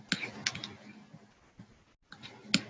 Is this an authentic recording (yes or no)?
yes